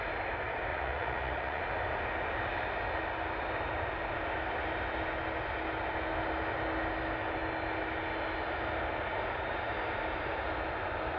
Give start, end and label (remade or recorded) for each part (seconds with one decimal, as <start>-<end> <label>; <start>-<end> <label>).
0.0-0.7 recorded; 0.7-1.6 remade; 1.6-11.2 recorded